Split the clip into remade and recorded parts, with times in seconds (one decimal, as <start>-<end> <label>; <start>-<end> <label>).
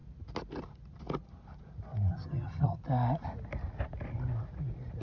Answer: 0.0-2.1 recorded; 2.1-2.8 remade; 2.8-5.0 recorded